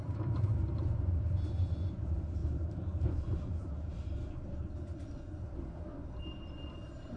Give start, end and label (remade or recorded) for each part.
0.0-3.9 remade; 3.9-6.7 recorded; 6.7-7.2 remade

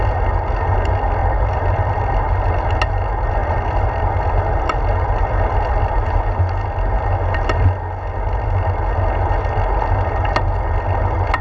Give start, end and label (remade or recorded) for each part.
0.0-1.2 recorded; 1.2-2.7 remade; 2.7-3.4 recorded; 3.4-5.9 remade; 5.9-11.4 recorded

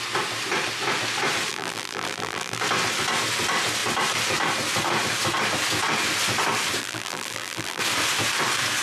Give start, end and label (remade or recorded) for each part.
0.0-1.5 recorded; 1.5-2.6 remade; 2.6-6.8 recorded; 6.8-7.8 remade; 7.8-8.8 recorded

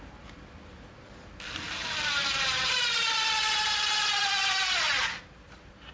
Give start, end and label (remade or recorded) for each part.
0.0-2.3 recorded; 2.3-5.9 remade

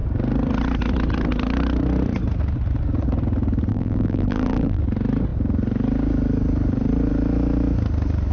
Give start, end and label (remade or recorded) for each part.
0.0-3.7 recorded; 3.7-4.8 remade; 4.8-8.3 recorded

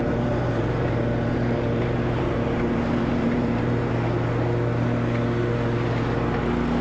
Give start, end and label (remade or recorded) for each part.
0.0-3.9 remade; 3.9-6.8 recorded